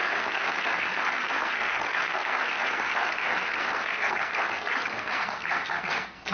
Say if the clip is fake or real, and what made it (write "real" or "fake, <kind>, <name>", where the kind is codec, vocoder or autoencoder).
fake, codec, SNAC